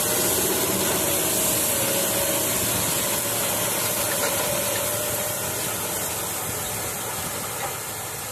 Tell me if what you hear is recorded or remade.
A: recorded